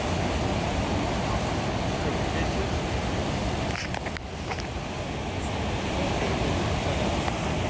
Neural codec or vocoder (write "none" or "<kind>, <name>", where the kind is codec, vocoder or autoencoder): none